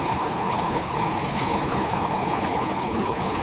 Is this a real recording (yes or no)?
no